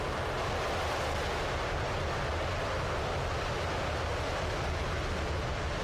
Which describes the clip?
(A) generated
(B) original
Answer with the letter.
B